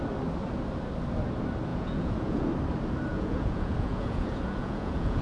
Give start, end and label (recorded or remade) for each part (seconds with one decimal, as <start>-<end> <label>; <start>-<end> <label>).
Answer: 0.0-1.7 recorded; 1.7-2.5 remade; 2.5-3.1 recorded; 3.1-5.2 remade